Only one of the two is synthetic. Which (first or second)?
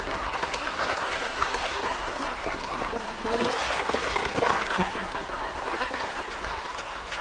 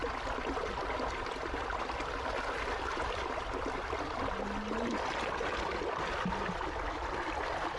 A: first